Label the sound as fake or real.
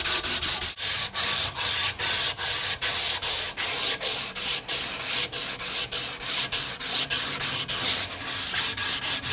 real